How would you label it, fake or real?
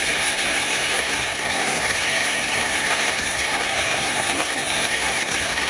fake